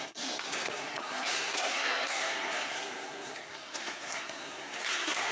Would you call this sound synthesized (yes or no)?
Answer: yes